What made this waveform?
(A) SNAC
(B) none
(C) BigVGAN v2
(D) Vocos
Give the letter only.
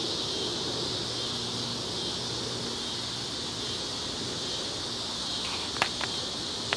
B